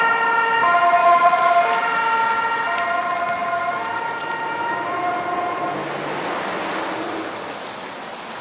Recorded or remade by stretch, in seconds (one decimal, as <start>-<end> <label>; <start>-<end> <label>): 0.0-1.0 recorded; 1.0-1.5 remade; 1.5-8.4 recorded